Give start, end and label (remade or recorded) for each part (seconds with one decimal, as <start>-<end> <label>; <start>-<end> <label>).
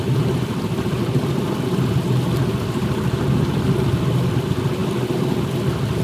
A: 0.0-6.0 remade